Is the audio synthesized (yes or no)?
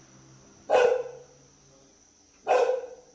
no